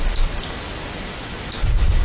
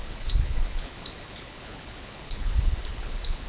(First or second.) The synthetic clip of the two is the second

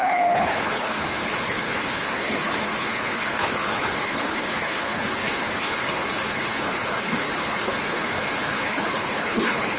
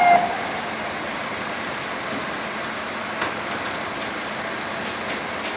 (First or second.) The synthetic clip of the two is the first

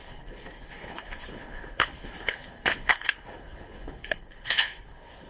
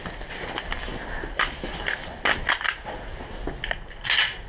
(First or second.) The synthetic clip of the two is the first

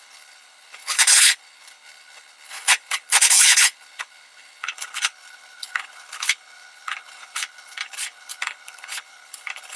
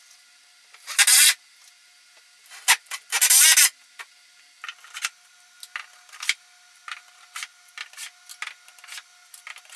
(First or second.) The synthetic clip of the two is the first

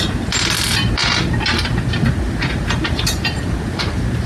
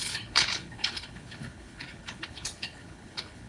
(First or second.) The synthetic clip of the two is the second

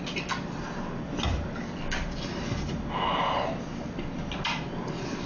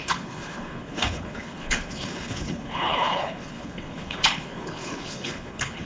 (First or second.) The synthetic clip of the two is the second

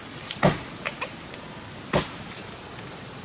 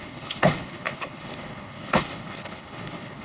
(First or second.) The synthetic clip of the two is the second